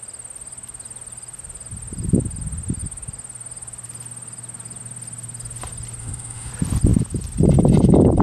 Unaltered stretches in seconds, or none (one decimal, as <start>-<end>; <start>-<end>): 0.0-6.0; 6.5-8.2